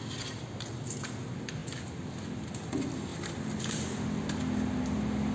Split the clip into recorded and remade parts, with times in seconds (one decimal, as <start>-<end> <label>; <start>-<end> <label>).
0.0-5.3 recorded